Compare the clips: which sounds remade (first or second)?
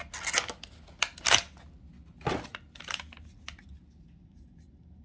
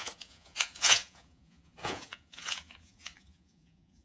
second